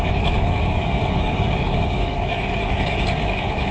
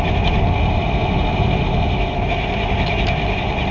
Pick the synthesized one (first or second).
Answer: first